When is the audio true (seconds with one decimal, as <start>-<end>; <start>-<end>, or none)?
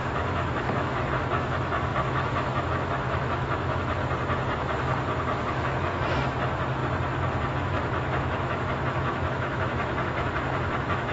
4.0-5.5; 6.8-7.5